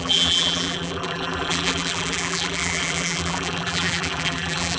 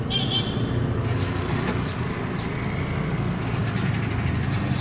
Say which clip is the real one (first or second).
second